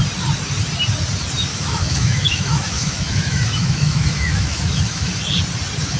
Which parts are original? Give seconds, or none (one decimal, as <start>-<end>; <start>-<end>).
0.0-1.5; 5.1-6.0

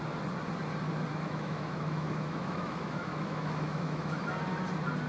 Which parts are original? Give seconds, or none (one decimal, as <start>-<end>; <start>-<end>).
0.0-1.1; 4.2-5.1